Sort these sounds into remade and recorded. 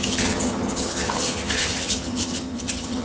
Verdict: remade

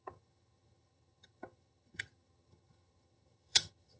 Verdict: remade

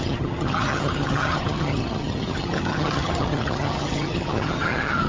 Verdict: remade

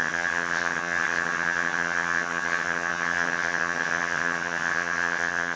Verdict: remade